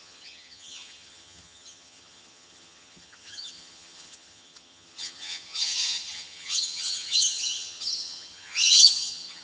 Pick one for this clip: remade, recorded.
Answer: remade